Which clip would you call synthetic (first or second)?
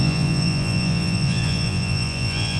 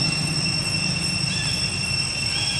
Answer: first